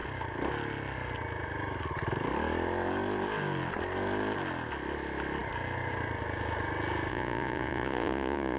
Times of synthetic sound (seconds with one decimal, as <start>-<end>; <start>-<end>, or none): 7.1-8.6